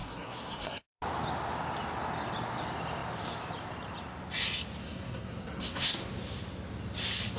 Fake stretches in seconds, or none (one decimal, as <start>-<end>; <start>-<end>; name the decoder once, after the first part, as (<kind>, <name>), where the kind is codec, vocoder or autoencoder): 0.0-1.0 (codec, SNAC); 4.8-6.1